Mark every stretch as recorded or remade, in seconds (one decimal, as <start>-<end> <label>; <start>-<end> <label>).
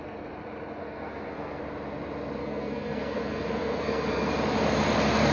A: 0.0-0.8 recorded; 0.8-1.6 remade; 1.6-2.4 recorded; 2.4-4.3 remade; 4.3-5.3 recorded